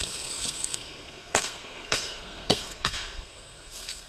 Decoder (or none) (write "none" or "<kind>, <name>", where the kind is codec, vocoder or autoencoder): codec, SNAC